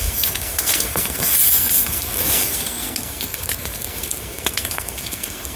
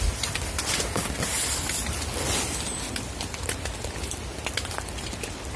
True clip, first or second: second